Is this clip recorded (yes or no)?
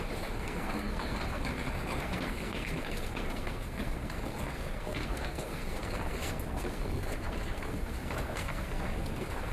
no